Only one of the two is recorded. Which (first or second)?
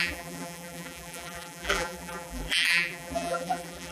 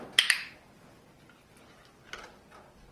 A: second